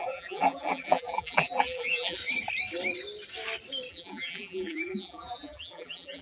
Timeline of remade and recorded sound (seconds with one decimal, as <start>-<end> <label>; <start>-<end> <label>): 0.0-2.2 remade; 2.2-3.9 recorded; 3.9-6.2 remade